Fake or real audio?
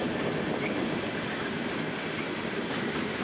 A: real